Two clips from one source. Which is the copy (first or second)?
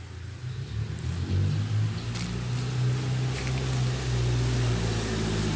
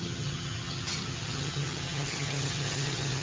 second